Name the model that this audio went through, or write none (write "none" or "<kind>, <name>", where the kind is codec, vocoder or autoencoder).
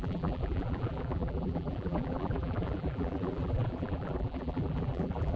vocoder, BigVGAN v2